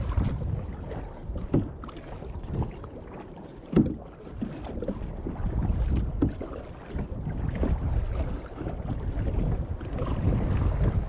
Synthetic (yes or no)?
no